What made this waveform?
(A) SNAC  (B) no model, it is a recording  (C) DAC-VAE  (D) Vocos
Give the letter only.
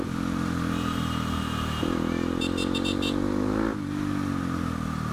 B